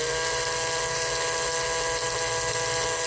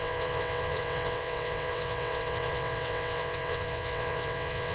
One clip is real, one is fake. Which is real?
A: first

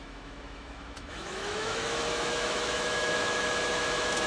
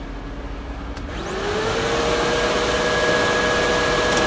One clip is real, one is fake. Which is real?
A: second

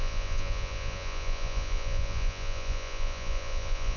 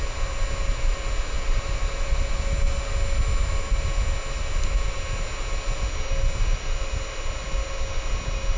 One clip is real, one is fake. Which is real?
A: second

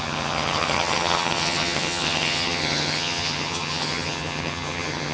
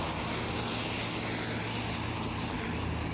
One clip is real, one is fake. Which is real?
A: second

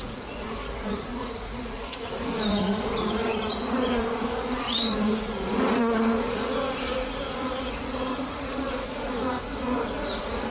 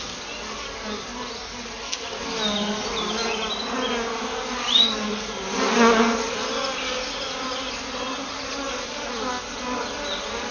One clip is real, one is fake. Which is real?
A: second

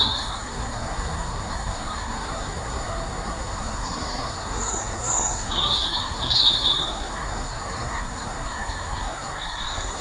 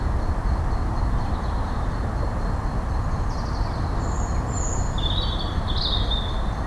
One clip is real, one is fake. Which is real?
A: second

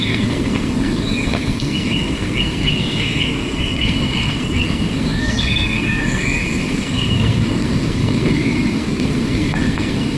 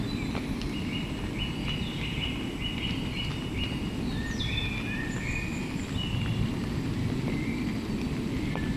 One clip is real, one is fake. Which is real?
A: second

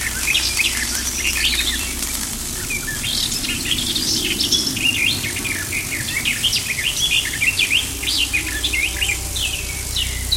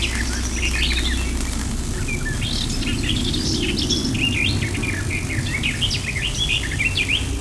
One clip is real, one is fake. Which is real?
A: second